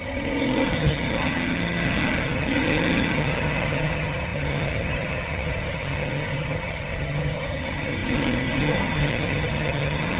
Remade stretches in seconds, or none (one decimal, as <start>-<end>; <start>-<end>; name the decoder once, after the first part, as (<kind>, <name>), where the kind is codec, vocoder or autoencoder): 0.0-10.2 (vocoder, HiFi-GAN)